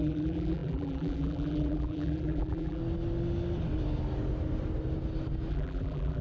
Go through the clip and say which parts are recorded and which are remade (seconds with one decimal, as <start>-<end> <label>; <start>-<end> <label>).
0.0-2.8 remade; 2.8-5.5 recorded; 5.5-6.2 remade